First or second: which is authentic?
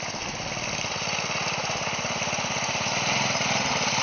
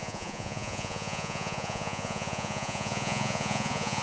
first